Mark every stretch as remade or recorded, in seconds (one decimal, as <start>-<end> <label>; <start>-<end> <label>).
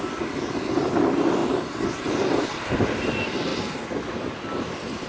0.0-1.4 remade; 1.4-2.5 recorded; 2.5-5.1 remade